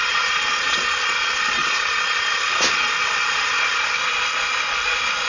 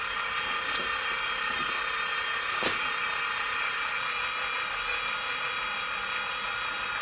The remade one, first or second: first